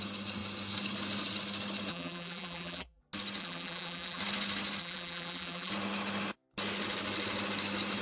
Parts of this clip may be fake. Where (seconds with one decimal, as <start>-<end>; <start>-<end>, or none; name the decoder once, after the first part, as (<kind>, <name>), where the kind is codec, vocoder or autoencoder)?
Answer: 1.9-3.0 (vocoder, BigVGAN v2); 3.4-4.2; 4.8-5.7